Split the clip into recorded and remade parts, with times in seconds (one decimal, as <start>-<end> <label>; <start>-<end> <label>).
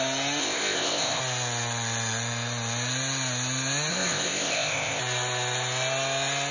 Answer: 0.0-0.4 recorded; 0.4-1.2 remade; 1.2-3.9 recorded; 3.9-5.0 remade; 5.0-6.5 recorded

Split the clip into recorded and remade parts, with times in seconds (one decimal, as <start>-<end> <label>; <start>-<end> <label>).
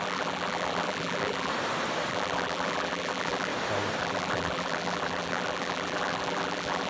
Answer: 0.0-1.5 remade; 1.5-2.1 recorded; 2.1-3.5 remade; 3.5-4.0 recorded; 4.0-6.9 remade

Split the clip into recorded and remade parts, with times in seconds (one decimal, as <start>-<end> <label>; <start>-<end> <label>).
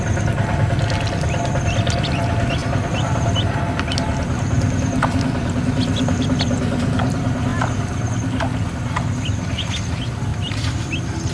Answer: 0.0-2.6 recorded; 2.6-3.6 remade; 3.6-10.3 recorded; 10.3-10.8 remade; 10.8-11.3 recorded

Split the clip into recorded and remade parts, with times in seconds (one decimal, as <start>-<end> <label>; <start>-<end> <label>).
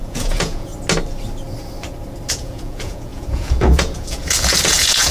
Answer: 0.0-0.7 remade; 0.7-2.3 recorded; 2.3-5.1 remade